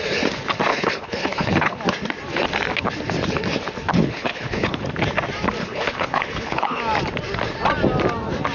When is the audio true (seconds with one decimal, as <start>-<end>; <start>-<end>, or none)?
0.0-0.7; 1.8-3.9; 4.8-5.6; 6.8-8.5